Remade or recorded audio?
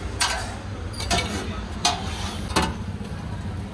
recorded